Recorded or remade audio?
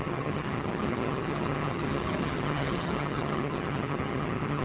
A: remade